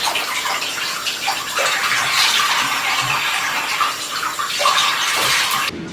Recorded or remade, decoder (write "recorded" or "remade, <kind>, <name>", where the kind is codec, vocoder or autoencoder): recorded